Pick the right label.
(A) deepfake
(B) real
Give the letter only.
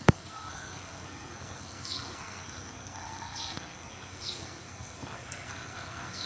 A